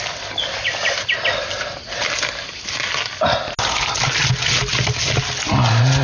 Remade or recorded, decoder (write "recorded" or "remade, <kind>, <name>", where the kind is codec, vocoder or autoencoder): recorded